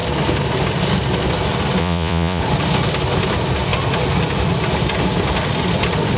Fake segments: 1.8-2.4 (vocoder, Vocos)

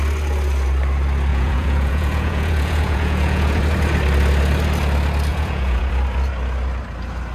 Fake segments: 1.3-3.6 (vocoder, Vocos); 5.3-5.9